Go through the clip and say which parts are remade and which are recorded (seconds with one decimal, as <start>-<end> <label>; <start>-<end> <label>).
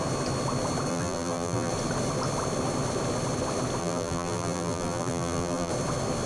0.0-0.9 recorded; 0.9-1.7 remade; 1.7-3.8 recorded; 3.8-5.7 remade; 5.7-6.3 recorded